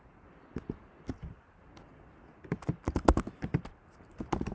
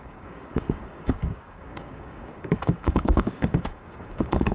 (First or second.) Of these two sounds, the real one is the first